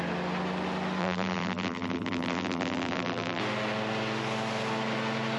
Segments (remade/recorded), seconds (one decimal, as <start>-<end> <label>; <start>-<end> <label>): 0.0-1.0 recorded; 1.0-3.4 remade; 3.4-5.4 recorded